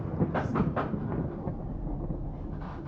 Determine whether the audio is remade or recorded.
recorded